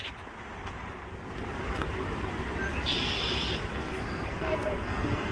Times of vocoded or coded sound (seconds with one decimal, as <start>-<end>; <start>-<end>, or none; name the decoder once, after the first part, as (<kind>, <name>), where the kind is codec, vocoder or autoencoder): 3.7-5.3 (codec, SNAC)